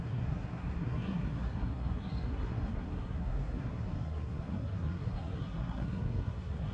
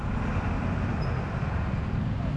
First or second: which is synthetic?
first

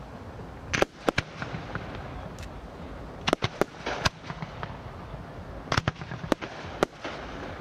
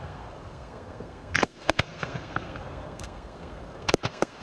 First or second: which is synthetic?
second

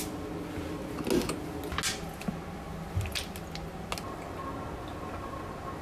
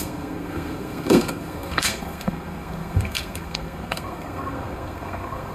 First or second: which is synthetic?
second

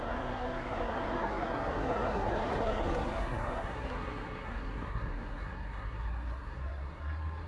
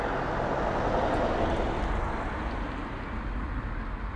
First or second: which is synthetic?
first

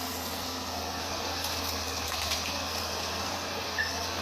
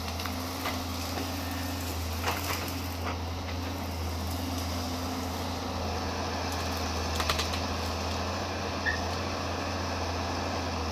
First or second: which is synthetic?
first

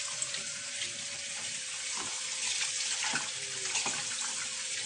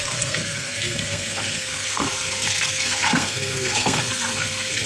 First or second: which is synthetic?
second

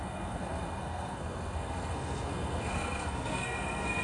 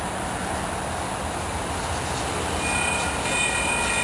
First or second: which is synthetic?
first